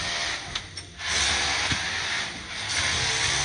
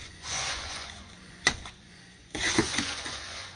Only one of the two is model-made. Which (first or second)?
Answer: second